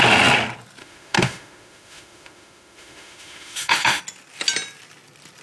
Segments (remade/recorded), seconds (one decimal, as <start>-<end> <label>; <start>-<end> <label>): 0.0-0.8 recorded; 0.8-4.0 remade; 4.0-5.4 recorded